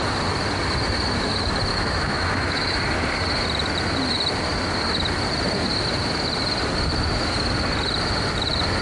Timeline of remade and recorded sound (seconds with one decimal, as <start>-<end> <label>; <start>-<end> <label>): 0.0-1.7 recorded; 1.7-2.8 remade; 2.8-8.8 recorded